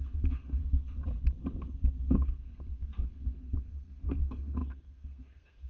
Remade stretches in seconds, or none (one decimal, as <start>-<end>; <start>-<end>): 0.0-0.6; 2.1-5.7